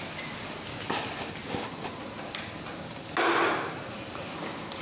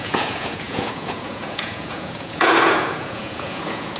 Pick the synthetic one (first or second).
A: second